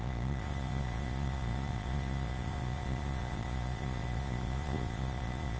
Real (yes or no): no